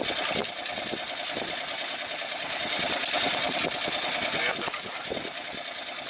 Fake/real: real